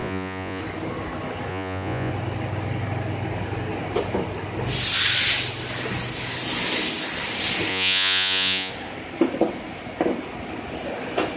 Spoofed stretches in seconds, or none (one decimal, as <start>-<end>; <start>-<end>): 0.0-0.6; 1.5-2.1; 7.7-8.7

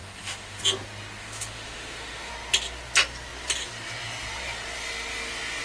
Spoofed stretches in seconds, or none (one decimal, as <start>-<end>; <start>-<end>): 0.0-0.6; 1.2-2.3

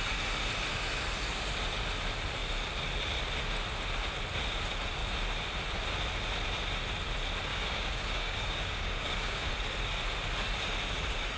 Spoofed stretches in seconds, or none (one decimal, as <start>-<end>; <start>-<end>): 7.5-9.5

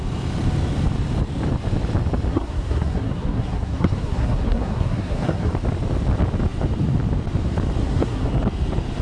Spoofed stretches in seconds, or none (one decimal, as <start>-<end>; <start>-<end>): 2.3-5.5; 7.8-8.3